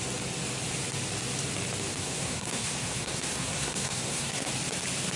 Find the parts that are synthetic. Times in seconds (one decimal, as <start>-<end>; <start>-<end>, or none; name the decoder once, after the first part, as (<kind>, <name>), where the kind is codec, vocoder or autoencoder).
1.9-4.5 (codec, SNAC)